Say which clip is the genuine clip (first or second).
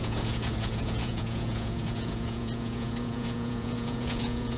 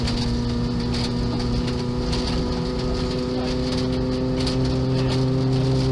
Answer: second